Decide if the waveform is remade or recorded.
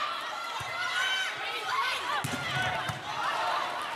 recorded